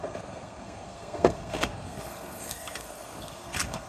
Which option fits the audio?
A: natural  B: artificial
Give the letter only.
B